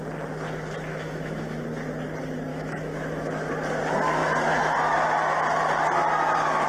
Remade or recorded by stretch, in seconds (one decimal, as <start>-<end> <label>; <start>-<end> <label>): 0.0-0.9 recorded; 0.9-1.6 remade; 1.6-2.5 recorded; 2.5-3.5 remade; 3.5-6.7 recorded